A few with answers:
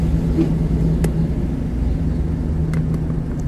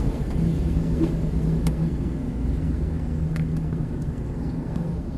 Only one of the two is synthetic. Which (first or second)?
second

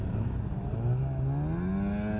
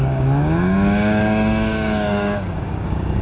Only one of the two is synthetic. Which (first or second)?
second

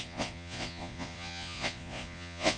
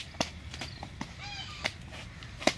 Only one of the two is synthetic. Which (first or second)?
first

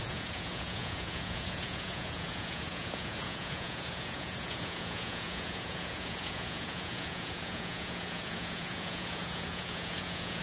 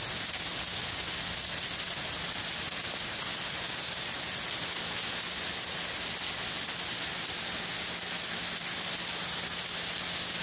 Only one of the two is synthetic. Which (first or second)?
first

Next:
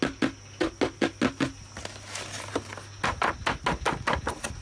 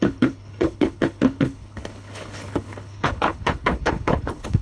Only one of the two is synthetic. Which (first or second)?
second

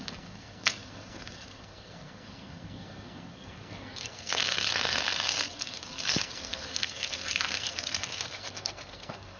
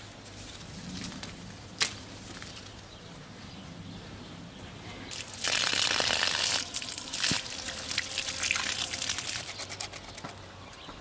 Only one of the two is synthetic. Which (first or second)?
first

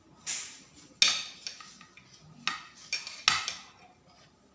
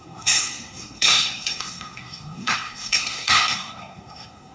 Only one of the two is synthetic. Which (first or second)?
second